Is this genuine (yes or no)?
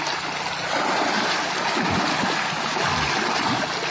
yes